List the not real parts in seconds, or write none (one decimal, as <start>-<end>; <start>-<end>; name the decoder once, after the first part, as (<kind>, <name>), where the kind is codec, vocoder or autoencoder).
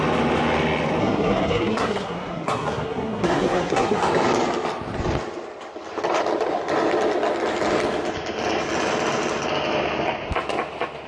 1.0-4.0 (codec, SNAC)